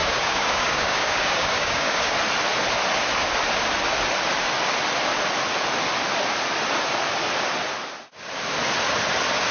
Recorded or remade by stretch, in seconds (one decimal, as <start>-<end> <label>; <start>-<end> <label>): 0.0-2.1 remade; 2.1-9.5 recorded